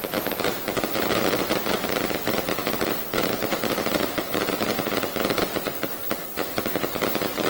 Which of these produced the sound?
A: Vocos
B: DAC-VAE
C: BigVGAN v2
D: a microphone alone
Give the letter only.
C